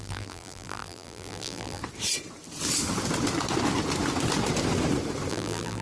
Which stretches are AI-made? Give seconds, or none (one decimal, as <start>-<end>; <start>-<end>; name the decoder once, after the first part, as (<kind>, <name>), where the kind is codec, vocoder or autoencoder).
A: 0.0-1.8 (vocoder, BigVGAN v2); 5.3-5.8